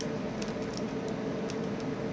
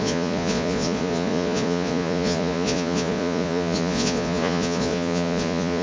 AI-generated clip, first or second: second